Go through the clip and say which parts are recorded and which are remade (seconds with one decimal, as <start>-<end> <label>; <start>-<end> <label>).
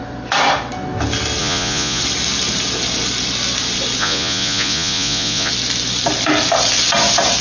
0.0-1.4 recorded; 1.4-2.0 remade; 2.0-4.0 recorded; 4.0-5.5 remade; 5.5-7.4 recorded